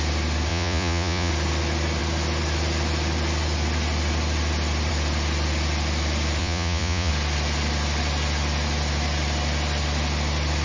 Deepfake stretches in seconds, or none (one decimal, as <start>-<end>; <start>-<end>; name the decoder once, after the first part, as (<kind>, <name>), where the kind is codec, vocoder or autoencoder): 0.5-1.3 (vocoder, Vocos); 6.4-7.1